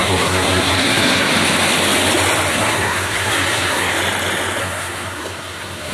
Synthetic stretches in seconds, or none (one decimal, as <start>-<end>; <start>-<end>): 0.0-1.3; 2.5-3.9; 4.6-5.9

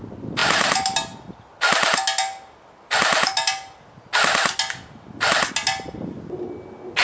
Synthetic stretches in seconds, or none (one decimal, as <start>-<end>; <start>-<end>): none

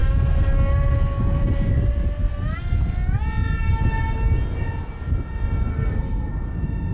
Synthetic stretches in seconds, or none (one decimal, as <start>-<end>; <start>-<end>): 5.7-6.3

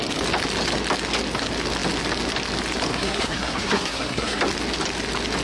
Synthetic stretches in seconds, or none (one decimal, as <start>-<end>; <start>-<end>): 2.9-4.4

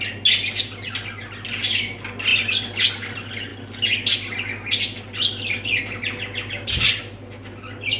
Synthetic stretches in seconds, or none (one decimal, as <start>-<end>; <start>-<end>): none

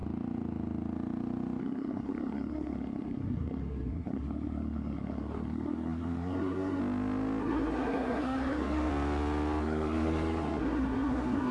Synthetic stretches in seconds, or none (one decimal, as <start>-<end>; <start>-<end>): 1.6-6.8; 7.4-8.9; 9.6-11.5

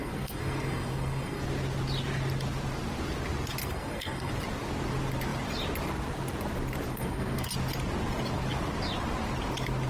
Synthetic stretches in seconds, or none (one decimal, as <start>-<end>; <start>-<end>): 0.0-1.4; 3.6-4.3; 6.9-7.5

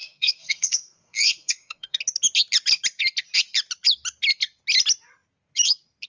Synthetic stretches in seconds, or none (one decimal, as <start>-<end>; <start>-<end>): 0.0-2.0